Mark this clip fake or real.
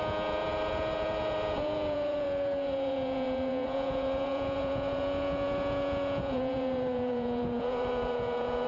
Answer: fake